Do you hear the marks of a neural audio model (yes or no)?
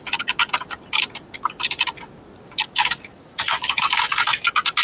no